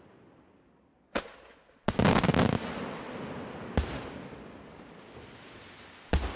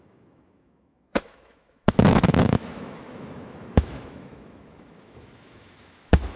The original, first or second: first